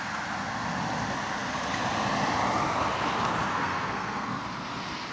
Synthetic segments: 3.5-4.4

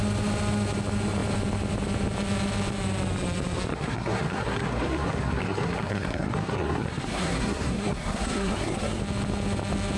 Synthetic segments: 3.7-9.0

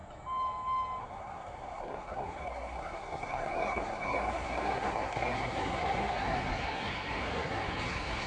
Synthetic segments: 1.0-8.3

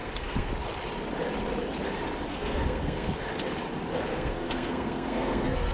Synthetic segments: 0.0-0.5; 2.3-3.1; 4.1-5.7

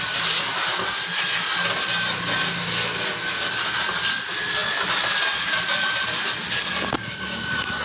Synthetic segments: none

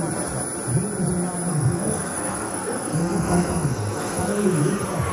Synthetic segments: 1.5-4.6

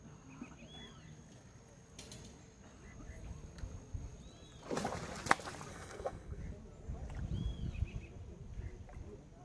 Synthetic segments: 5.7-6.4